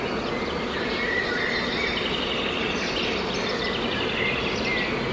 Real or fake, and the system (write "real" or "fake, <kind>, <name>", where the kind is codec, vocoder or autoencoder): real